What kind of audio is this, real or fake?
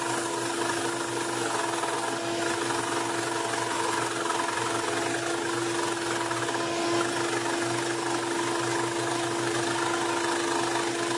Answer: real